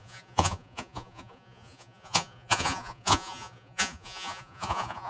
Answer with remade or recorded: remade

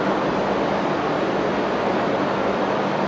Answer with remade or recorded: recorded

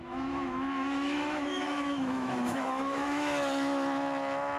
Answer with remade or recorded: remade